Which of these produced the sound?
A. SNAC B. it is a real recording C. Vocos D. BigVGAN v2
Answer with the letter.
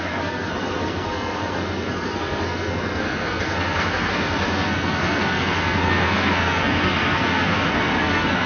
A